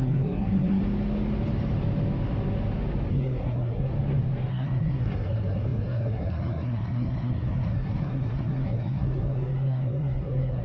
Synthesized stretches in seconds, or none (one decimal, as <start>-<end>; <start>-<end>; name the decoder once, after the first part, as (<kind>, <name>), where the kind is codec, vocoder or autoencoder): 0.0-0.8 (codec, SNAC); 3.1-3.9; 4.5-10.6